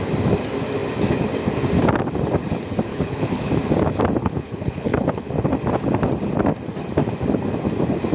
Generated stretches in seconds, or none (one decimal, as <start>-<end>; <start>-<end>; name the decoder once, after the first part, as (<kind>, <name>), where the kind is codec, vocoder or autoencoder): 2.9-3.5 (codec, HILCodec); 4.2-5.3